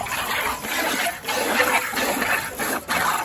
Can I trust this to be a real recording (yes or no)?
yes